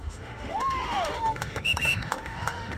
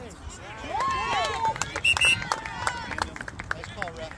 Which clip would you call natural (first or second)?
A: second